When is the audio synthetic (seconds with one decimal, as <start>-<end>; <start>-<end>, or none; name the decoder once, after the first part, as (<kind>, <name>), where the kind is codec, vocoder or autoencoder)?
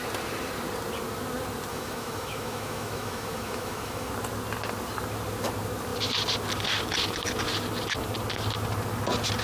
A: 1.7-4.1 (autoencoder, DAC-VAE)